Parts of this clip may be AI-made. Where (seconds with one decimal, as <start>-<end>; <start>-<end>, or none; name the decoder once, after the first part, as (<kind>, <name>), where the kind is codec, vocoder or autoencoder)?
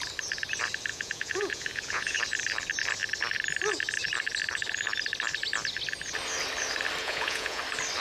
0.9-2.2 (vocoder, Vocos); 7.0-7.6